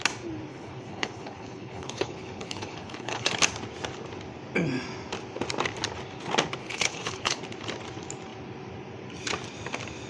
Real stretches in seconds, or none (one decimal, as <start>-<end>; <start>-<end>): 0.0-0.5; 3.3-6.6; 7.4-10.1